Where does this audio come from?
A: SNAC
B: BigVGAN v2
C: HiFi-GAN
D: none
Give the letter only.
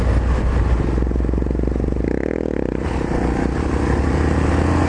D